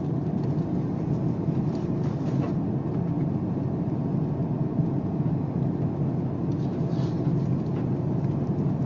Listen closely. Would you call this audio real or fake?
real